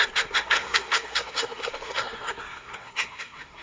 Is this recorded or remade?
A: remade